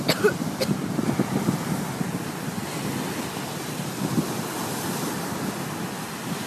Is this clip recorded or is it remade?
recorded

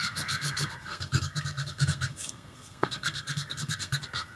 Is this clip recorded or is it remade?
remade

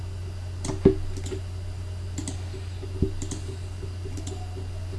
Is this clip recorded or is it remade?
recorded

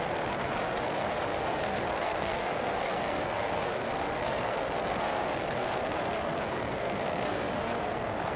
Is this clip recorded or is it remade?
remade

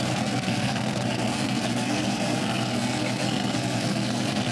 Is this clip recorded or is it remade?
remade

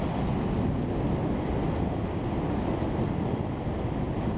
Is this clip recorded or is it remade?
recorded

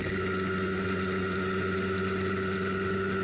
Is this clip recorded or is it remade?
recorded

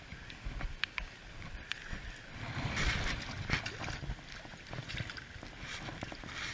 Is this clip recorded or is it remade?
recorded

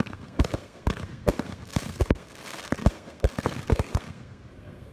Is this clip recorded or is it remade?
remade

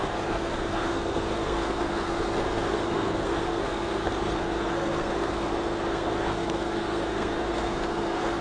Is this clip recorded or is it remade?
remade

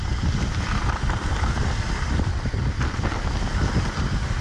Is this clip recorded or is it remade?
recorded